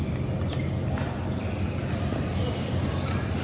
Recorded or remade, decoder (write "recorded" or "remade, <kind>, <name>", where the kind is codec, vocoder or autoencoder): recorded